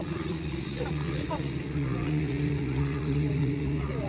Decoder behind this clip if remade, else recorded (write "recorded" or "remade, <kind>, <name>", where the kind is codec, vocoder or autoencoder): remade, vocoder, Vocos